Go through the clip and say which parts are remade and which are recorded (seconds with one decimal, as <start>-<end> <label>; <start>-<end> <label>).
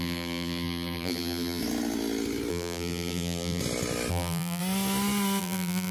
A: 0.0-1.6 remade; 1.6-2.5 recorded; 2.5-3.6 remade; 3.6-4.1 recorded; 4.1-4.6 remade; 4.6-5.4 recorded; 5.4-5.9 remade